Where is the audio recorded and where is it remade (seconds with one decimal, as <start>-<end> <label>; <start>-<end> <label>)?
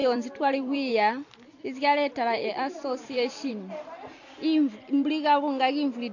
0.0-0.9 remade; 0.9-2.5 recorded; 2.5-3.5 remade; 3.5-6.1 recorded